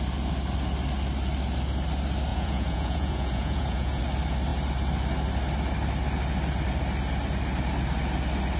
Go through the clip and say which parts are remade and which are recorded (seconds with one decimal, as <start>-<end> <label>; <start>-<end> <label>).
0.0-2.3 recorded; 2.3-4.0 remade; 4.0-8.6 recorded